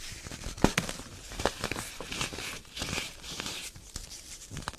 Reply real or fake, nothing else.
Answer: fake